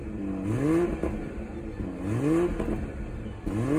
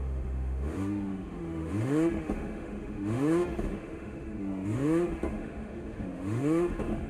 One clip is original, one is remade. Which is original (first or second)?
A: first